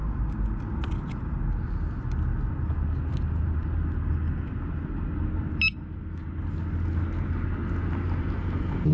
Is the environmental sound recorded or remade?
recorded